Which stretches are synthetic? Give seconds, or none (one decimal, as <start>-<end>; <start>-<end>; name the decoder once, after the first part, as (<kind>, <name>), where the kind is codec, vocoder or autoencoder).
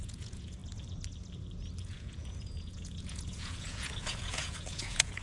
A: 0.0-0.6 (vocoder, Vocos); 1.8-5.2